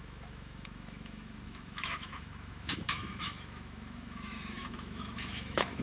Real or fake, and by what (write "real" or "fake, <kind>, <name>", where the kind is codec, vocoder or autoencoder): fake, autoencoder, DAC-VAE